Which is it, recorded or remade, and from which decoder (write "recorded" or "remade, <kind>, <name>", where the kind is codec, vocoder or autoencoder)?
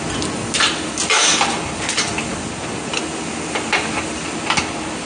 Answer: recorded